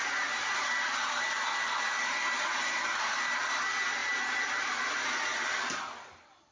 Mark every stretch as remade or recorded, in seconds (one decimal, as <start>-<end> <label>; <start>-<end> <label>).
0.0-6.5 recorded